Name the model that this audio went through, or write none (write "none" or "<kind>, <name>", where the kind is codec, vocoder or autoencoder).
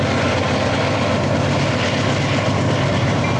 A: none